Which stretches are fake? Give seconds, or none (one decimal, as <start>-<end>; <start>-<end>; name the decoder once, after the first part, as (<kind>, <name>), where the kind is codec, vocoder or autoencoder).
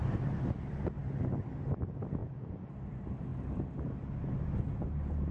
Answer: 2.2-2.7 (vocoder, Vocos)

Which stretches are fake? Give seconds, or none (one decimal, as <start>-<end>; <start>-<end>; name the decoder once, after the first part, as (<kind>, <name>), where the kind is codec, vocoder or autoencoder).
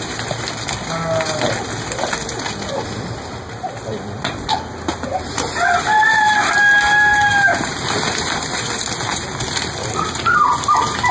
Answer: none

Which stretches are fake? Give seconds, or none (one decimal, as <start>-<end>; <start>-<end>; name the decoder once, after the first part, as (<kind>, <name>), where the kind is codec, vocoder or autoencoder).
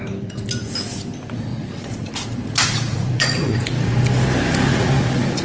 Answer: 1.5-2.1 (vocoder, Vocos); 2.9-3.5; 4.7-5.4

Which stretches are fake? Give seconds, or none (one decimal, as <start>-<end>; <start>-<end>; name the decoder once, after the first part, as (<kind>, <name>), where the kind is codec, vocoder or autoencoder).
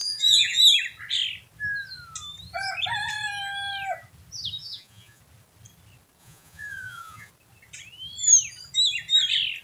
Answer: 0.0-0.6 (vocoder, Vocos); 4.6-5.2; 6.2-7.3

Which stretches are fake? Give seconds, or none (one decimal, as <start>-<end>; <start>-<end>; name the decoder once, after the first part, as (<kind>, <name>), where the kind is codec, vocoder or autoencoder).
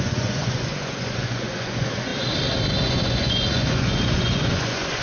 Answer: 0.0-2.1 (vocoder, Vocos); 2.8-5.0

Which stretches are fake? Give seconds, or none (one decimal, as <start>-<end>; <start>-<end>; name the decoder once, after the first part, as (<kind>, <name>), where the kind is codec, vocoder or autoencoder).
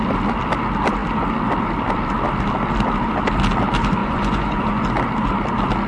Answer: 4.0-4.8 (vocoder, Vocos)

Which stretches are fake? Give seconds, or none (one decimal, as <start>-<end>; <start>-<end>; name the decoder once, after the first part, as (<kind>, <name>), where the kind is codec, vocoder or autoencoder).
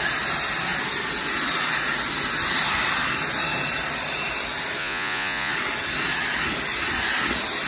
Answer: 4.8-5.5 (vocoder, Vocos)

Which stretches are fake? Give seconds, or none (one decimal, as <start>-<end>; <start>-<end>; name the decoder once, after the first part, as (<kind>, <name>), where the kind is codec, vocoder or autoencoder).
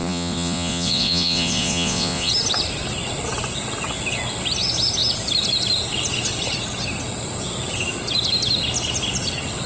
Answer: 0.0-2.3 (vocoder, Vocos)